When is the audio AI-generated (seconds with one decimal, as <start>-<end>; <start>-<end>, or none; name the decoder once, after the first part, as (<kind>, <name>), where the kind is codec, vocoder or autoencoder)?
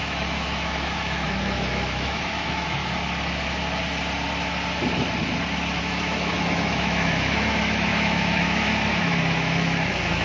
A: 0.0-2.8 (autoencoder, DAC-VAE); 5.8-10.2